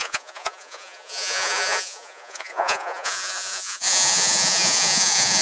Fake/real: fake